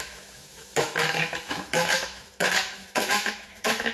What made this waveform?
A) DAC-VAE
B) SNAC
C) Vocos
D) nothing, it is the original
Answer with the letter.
A